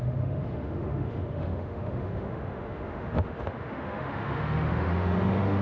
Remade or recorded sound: remade